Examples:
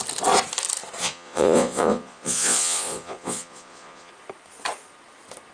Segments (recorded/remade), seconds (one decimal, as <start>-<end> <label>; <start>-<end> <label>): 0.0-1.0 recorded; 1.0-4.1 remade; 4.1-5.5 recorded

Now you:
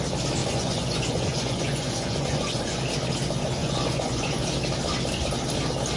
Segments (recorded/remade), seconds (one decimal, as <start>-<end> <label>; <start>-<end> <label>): 0.0-0.4 recorded; 0.4-2.8 remade; 2.8-3.6 recorded; 3.6-4.4 remade; 4.4-6.0 recorded

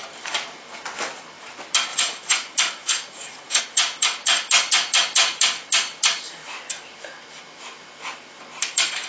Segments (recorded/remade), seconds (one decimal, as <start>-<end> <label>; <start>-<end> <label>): 0.0-1.9 recorded; 1.9-3.6 remade; 3.6-9.1 recorded

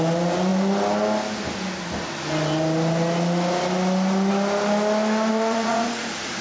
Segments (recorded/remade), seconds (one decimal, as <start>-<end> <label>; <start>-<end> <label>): 0.0-5.3 recorded; 5.3-6.4 remade

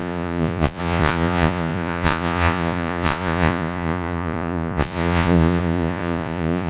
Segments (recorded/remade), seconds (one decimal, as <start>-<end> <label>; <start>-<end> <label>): 0.0-6.7 remade